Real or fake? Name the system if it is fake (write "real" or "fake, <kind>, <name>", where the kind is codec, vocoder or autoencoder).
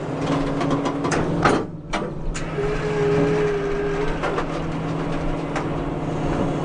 real